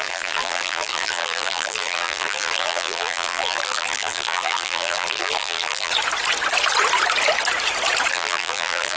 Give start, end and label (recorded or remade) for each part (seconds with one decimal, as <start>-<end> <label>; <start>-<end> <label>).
0.0-5.9 remade; 5.9-8.1 recorded; 8.1-9.0 remade